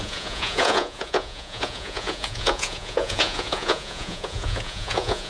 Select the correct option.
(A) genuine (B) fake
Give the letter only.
B